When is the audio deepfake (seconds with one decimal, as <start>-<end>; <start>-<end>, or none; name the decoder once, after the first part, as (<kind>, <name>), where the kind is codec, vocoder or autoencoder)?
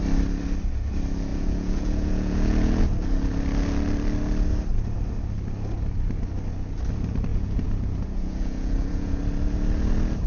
1.3-2.8 (vocoder, Vocos); 7.3-9.2